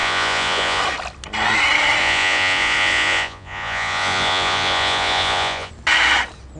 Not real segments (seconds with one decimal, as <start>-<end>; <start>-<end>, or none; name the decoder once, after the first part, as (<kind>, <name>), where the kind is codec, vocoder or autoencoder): 0.0-0.8 (vocoder, Vocos); 2.0-5.7